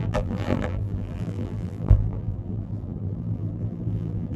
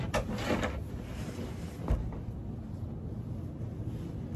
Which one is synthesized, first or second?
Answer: first